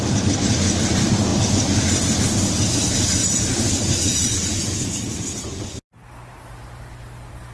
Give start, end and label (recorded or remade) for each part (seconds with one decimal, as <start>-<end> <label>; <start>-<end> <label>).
0.0-7.5 recorded